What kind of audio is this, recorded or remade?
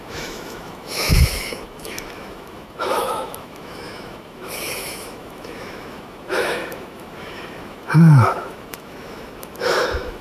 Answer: remade